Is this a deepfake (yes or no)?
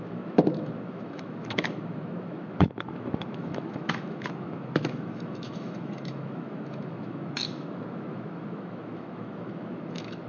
yes